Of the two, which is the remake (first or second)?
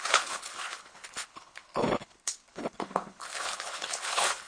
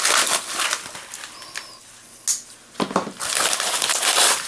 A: first